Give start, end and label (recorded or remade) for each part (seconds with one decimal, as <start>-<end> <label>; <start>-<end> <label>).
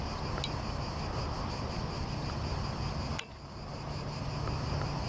0.0-3.1 recorded; 3.1-4.2 remade; 4.2-5.1 recorded